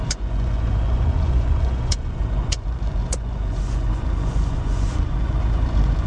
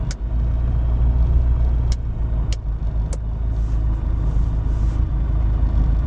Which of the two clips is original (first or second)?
second